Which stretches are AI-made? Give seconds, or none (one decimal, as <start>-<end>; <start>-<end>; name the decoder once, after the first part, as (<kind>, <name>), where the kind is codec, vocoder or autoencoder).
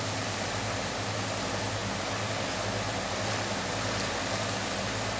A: none